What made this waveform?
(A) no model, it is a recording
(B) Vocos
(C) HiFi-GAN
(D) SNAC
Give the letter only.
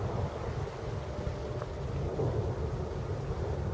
A